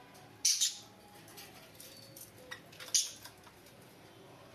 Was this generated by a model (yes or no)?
no